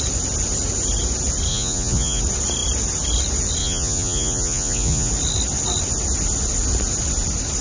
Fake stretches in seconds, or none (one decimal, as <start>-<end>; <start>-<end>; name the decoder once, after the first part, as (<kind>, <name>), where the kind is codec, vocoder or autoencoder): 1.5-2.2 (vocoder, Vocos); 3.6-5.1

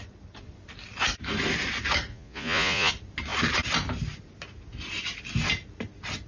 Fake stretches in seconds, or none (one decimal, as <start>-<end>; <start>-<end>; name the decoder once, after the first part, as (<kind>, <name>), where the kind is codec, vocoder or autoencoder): 2.1-2.9 (vocoder, Vocos)

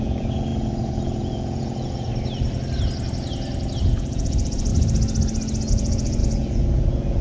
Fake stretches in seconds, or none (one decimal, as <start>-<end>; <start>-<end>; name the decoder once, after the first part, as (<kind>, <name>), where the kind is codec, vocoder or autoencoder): 0.0-2.1 (vocoder, Vocos); 3.8-4.7; 5.7-7.2